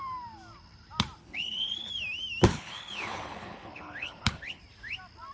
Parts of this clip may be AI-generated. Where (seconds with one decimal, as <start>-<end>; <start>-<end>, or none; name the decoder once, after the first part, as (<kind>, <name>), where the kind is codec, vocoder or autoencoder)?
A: 1.2-1.9 (codec, HILCodec); 2.5-4.6